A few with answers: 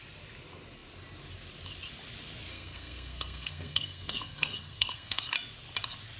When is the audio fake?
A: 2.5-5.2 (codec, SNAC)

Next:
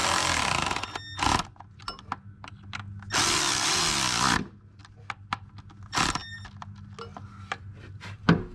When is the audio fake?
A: 4.8-5.4 (vocoder, BigVGAN v2)

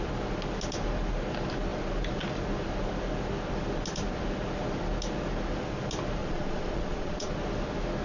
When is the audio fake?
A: 6.2-7.3 (vocoder, Vocos)

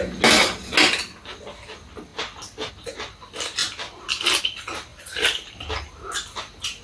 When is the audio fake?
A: 2.1-2.7 (vocoder, BigVGAN v2); 4.9-5.8

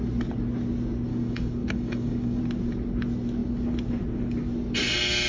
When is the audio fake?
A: 1.1-2.4 (codec, DAC)

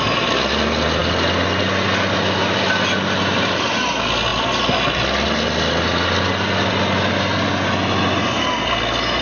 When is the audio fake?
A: none

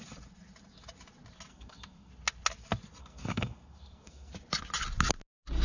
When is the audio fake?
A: 1.5-2.1 (codec, SNAC); 3.0-4.3

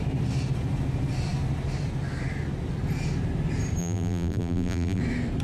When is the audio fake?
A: 3.8-5.0 (vocoder, BigVGAN v2)